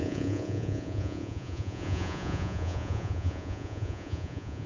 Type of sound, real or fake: fake